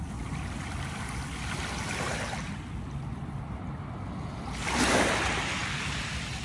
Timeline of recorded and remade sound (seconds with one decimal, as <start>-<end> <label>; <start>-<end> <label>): 0.0-6.4 recorded